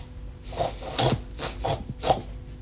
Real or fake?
real